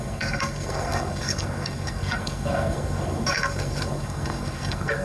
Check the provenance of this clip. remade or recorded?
remade